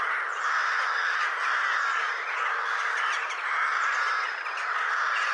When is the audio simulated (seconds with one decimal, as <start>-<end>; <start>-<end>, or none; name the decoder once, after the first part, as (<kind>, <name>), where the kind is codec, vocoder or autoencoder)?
1.0-4.2 (vocoder, BigVGAN v2)